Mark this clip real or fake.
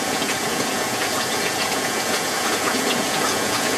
fake